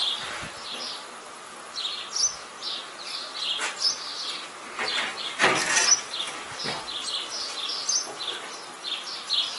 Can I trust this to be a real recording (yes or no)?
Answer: yes